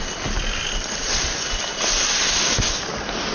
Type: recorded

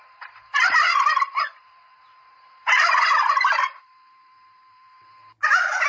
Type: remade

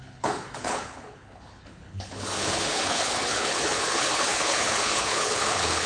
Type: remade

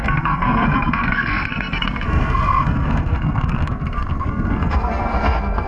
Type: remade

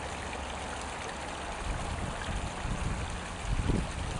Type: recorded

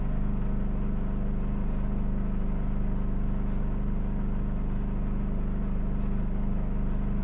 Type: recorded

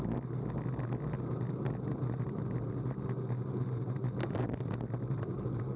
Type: recorded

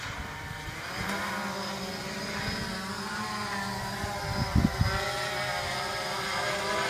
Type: recorded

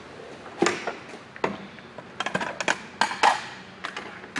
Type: recorded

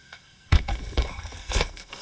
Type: remade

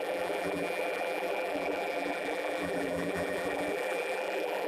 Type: remade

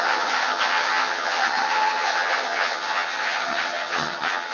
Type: remade